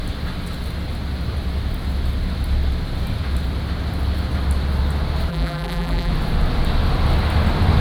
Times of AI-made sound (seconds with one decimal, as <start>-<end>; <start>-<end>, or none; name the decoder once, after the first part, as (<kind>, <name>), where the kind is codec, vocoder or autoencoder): 5.3-6.1 (vocoder, BigVGAN v2)